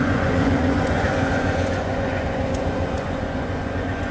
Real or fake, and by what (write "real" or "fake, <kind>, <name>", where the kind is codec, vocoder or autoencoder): fake, vocoder, Vocos